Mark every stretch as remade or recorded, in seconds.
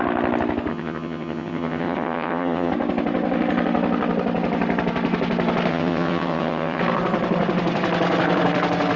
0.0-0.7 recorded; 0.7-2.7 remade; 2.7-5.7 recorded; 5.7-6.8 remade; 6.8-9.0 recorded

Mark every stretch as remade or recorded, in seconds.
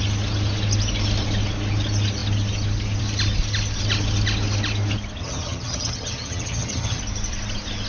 0.0-5.2 recorded; 5.2-7.0 remade; 7.0-7.9 recorded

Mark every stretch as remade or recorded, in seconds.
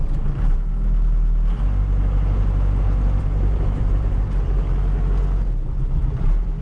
0.0-0.7 remade; 0.7-3.2 recorded; 3.2-4.8 remade; 4.8-5.8 recorded; 5.8-6.6 remade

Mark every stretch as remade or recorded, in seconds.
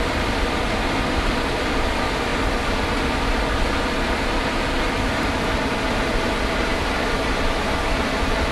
0.0-8.5 recorded